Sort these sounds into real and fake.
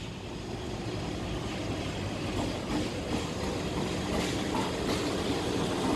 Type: real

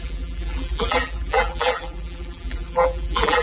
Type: fake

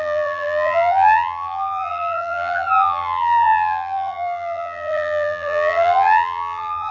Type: fake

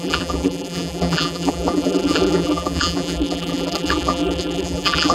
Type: fake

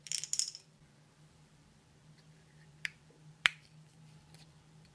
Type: fake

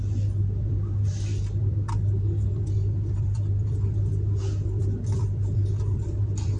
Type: fake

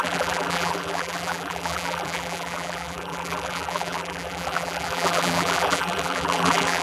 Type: fake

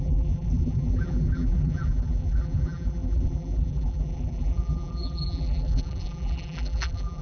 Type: fake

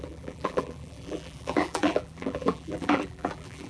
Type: fake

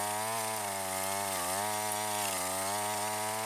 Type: real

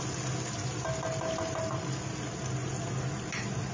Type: real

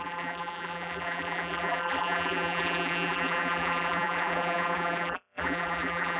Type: fake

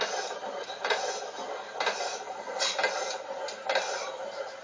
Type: fake